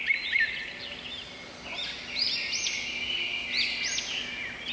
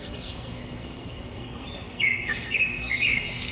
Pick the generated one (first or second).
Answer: second